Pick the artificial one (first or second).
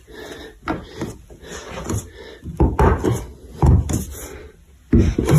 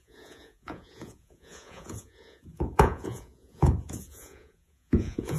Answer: second